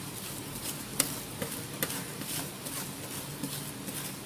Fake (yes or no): no